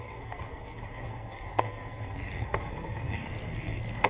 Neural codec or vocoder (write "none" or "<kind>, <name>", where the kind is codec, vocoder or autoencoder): codec, SNAC